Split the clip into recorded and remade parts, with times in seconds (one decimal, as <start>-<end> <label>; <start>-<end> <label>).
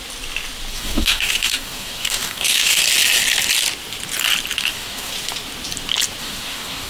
0.0-0.7 recorded; 0.7-2.8 remade; 2.8-4.6 recorded; 4.6-5.1 remade; 5.1-6.2 recorded; 6.2-6.9 remade